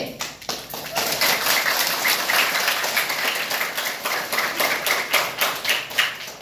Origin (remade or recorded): recorded